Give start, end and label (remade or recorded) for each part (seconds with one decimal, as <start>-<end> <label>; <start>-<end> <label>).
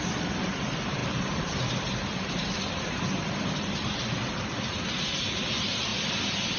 0.0-5.9 remade; 5.9-6.6 recorded